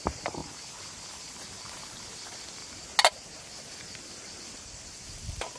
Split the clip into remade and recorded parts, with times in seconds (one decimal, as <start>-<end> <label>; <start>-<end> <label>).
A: 0.0-0.4 remade; 0.4-2.2 recorded; 2.2-2.6 remade; 2.6-4.4 recorded; 4.4-5.6 remade